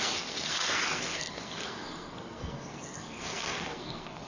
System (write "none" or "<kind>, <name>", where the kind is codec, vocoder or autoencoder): codec, SNAC